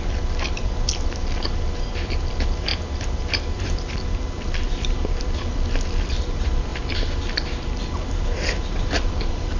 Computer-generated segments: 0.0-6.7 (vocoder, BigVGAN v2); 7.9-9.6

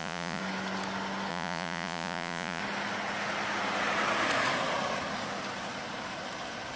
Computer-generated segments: 0.0-0.4 (vocoder, Vocos); 1.3-2.6